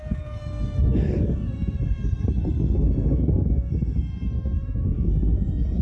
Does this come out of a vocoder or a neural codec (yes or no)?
yes